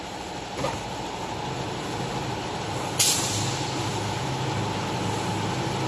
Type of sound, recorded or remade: recorded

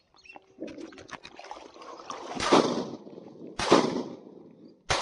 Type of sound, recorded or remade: recorded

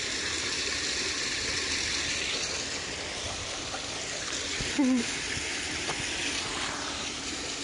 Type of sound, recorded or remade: recorded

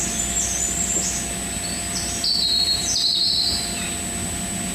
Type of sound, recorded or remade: recorded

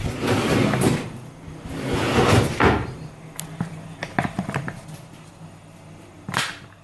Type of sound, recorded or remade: recorded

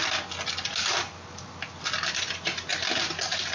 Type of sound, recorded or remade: recorded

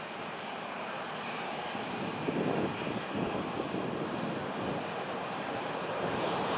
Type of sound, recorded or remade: recorded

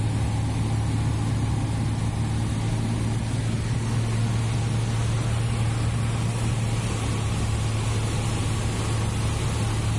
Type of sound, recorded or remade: recorded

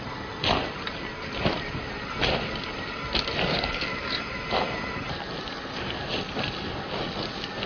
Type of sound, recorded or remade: recorded